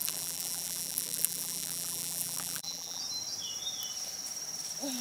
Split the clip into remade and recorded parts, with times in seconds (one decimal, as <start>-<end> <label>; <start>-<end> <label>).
0.0-3.0 remade; 3.0-5.0 recorded